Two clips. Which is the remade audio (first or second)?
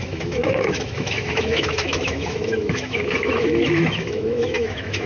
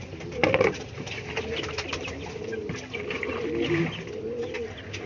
first